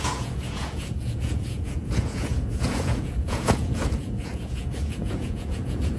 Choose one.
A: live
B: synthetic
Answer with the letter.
B